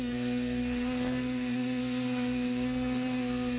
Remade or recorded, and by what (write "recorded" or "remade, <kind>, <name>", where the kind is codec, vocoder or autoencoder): remade, codec, SNAC